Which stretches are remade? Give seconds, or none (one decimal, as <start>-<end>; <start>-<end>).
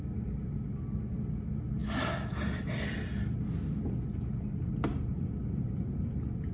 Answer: none